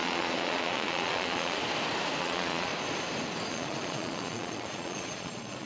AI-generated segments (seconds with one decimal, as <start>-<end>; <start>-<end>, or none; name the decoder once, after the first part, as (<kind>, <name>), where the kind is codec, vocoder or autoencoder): 0.0-1.6 (vocoder, Vocos); 2.2-2.7; 3.5-5.7